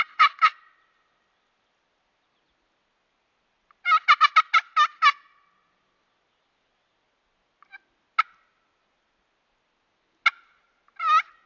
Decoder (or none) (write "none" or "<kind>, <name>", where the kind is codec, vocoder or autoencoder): none